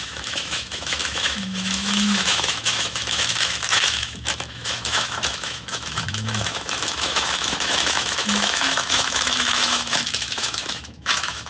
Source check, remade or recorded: remade